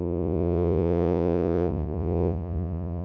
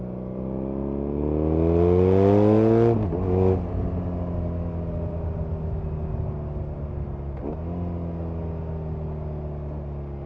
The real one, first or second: second